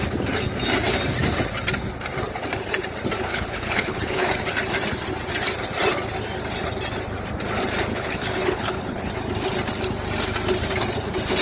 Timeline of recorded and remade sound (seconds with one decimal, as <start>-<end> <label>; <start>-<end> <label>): 0.0-3.3 recorded; 3.3-4.3 remade; 4.3-7.9 recorded; 7.9-9.1 remade; 9.1-11.4 recorded